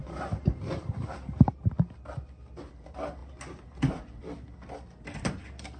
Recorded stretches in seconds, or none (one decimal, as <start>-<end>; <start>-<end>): 1.4-5.8